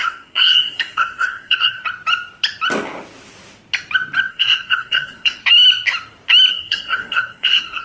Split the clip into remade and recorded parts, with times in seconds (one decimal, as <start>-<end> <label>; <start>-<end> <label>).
0.0-1.8 remade; 1.8-4.3 recorded; 4.3-5.4 remade; 5.4-6.5 recorded; 6.5-7.8 remade